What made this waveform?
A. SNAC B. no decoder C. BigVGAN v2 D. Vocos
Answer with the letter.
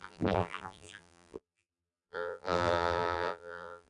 C